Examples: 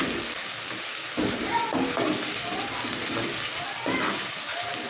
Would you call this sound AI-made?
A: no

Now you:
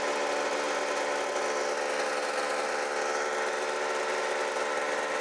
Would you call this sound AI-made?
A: no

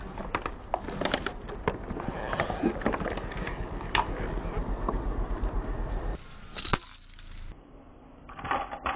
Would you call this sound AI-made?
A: no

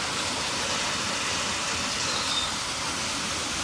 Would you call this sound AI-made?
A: no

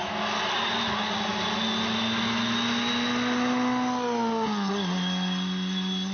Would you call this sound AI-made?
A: no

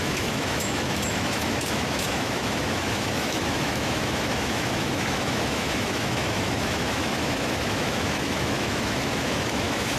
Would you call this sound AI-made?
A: yes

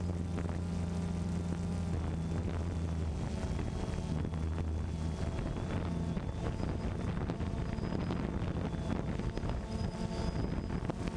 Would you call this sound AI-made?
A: no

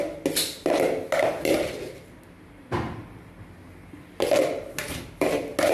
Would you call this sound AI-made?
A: no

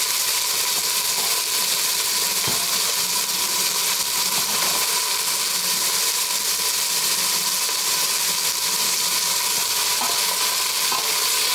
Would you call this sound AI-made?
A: no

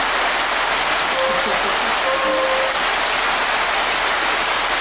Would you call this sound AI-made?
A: no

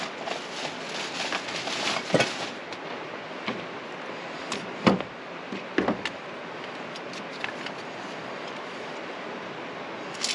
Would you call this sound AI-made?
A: no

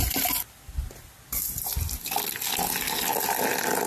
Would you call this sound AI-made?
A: no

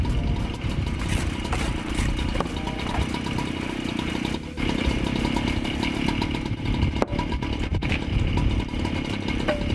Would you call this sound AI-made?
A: no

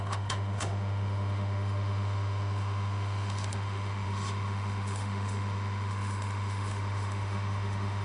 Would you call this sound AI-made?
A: yes